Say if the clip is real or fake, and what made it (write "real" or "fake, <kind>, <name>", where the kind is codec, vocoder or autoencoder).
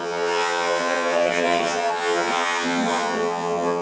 fake, vocoder, HiFi-GAN